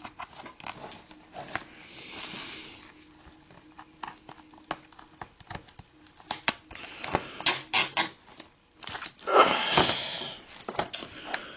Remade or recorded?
recorded